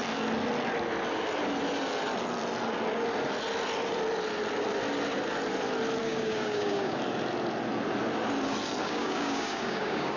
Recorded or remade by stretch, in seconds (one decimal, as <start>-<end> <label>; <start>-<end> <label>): 0.0-6.0 recorded; 6.0-7.0 remade; 7.0-8.8 recorded; 8.8-10.2 remade